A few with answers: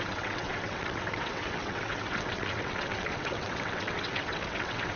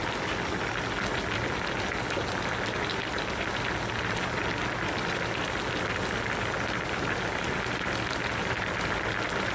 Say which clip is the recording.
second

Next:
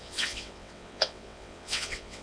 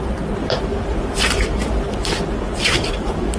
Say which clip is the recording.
second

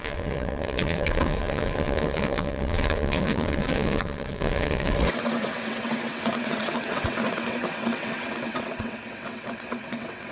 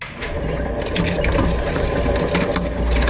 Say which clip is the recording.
second